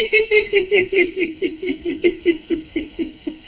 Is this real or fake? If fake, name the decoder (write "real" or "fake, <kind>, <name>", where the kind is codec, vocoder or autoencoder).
fake, codec, SNAC